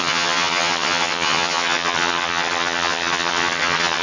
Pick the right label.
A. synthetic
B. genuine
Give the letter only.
A